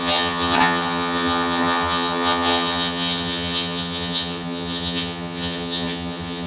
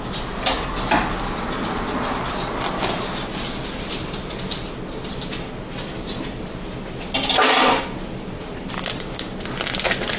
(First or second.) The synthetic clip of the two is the first